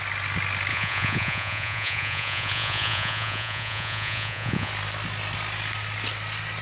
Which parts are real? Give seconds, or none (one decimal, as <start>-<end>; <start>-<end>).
0.0-0.7; 4.7-6.6